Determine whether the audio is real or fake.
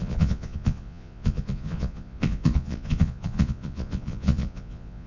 fake